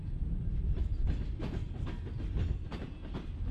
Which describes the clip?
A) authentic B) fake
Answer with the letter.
A